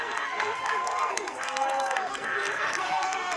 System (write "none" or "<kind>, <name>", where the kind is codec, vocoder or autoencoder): codec, SNAC